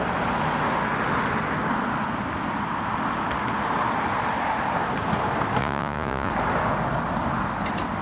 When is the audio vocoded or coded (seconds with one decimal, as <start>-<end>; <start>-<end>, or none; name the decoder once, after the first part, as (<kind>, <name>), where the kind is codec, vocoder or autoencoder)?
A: 5.6-6.3 (vocoder, Vocos)